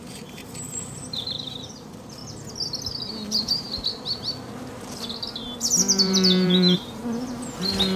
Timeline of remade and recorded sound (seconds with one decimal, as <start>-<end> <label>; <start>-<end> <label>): 0.0-2.2 remade; 2.2-3.4 recorded; 3.4-3.9 remade; 3.9-6.0 recorded; 6.0-7.0 remade; 7.0-8.0 recorded